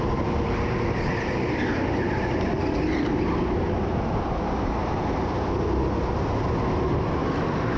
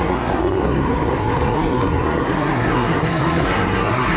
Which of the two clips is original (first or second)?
first